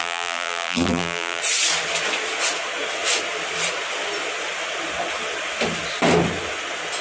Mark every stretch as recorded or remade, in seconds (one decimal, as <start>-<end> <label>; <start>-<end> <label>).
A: 0.0-1.4 remade; 1.4-7.0 recorded